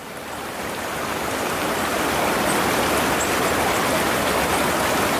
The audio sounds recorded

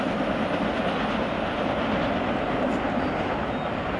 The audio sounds recorded